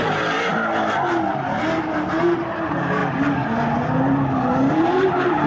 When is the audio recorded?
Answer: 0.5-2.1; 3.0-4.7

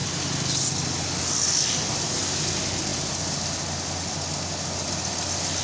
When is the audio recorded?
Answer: 0.0-5.6

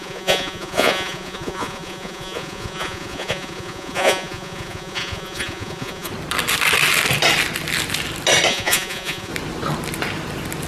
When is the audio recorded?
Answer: 6.1-8.5; 9.3-10.7

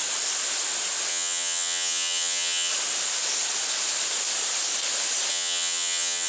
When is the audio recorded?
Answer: 0.0-1.1; 2.7-5.3

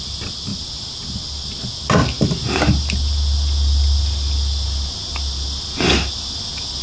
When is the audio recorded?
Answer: 0.0-6.8

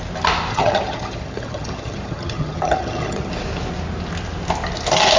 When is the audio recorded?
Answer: 0.0-0.5; 3.3-5.2

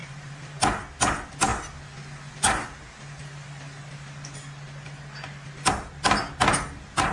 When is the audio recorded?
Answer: 0.6-7.1

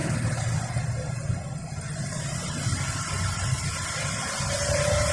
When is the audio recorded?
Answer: 0.0-5.1